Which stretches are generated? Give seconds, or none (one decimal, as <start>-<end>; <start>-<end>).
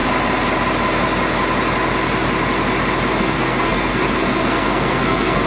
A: 3.2-5.5